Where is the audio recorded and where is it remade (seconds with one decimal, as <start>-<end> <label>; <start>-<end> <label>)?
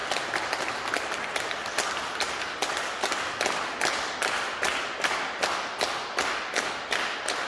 0.0-7.5 recorded